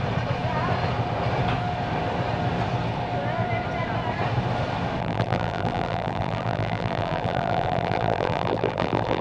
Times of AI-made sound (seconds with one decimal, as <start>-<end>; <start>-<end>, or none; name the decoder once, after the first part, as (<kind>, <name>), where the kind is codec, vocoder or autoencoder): 5.0-9.2 (vocoder, BigVGAN v2)